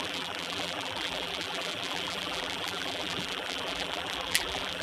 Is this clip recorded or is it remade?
remade